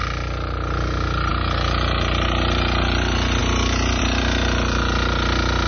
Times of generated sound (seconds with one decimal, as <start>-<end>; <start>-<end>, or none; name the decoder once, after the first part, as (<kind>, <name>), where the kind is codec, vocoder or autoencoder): none